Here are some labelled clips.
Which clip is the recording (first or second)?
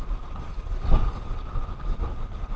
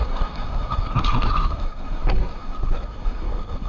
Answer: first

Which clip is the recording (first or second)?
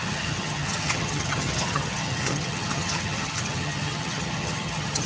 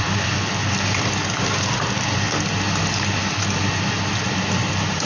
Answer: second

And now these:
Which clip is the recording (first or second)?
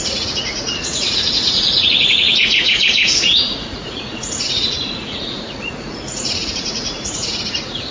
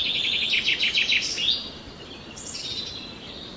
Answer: second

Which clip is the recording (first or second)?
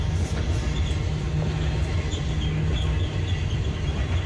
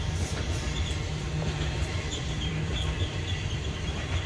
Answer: first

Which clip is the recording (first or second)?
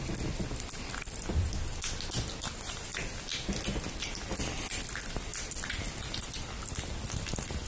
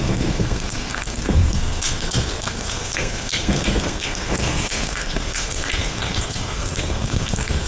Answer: first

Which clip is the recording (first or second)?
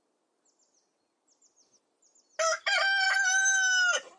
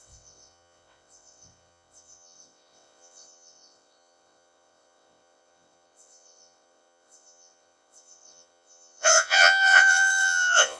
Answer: first